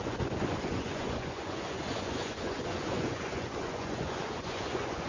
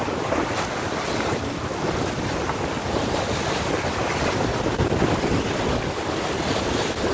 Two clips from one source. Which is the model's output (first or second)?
first